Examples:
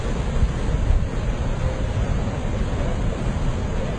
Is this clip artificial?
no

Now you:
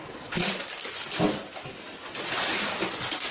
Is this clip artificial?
no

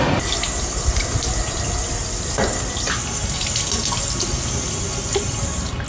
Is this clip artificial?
no